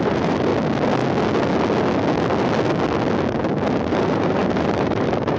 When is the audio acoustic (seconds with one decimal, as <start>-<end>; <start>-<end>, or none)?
0.5-3.7